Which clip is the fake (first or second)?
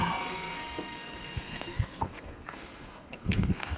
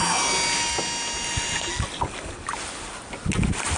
first